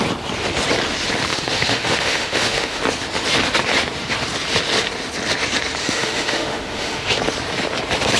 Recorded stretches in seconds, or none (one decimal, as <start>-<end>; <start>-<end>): 0.0-1.3; 2.8-5.8; 7.2-8.2